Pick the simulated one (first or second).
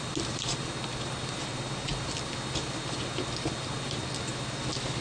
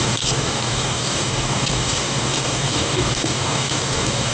second